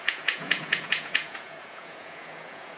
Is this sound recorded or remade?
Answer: remade